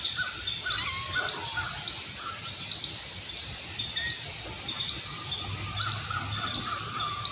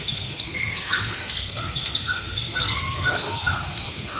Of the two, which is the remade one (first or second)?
second